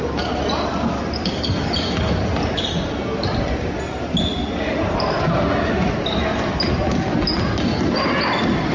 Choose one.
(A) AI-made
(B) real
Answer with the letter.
B